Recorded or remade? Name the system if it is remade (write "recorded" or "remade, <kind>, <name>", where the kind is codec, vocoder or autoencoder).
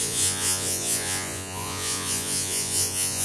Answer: remade, vocoder, Vocos